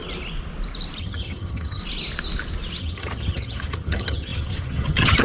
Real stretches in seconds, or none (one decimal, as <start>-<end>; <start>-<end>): 0.0-1.0; 1.8-2.8